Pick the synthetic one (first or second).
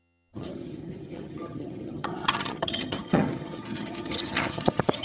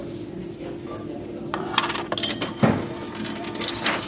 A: first